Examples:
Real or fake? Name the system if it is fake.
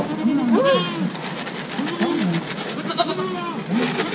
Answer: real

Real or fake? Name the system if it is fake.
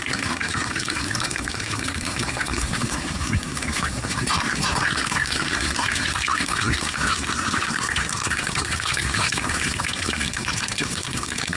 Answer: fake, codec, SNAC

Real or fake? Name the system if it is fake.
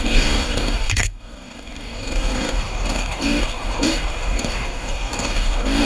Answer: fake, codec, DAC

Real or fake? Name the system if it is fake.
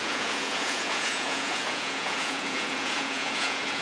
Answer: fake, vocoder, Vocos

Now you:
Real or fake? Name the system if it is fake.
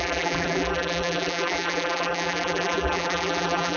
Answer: fake, vocoder, BigVGAN v2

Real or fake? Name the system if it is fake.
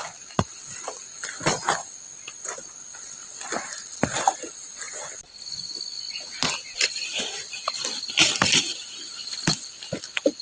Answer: real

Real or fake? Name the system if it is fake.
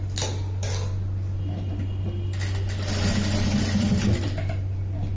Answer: real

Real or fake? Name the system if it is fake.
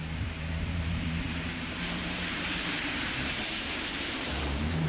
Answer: fake, vocoder, BigVGAN v2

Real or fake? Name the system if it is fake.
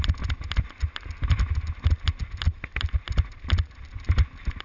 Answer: real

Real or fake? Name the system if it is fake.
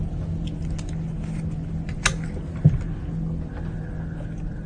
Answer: real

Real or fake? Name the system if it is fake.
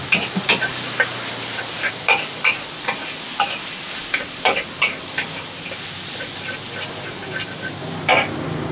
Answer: real